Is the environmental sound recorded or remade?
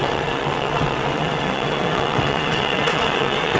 remade